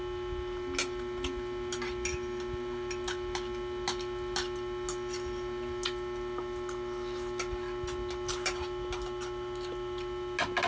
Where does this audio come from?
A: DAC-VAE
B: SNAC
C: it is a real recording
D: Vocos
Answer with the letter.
C